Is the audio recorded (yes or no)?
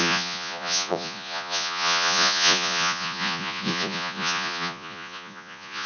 no